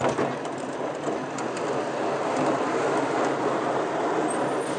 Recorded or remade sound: recorded